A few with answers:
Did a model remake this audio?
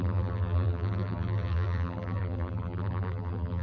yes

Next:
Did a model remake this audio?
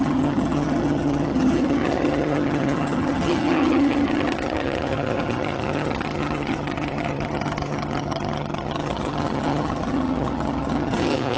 yes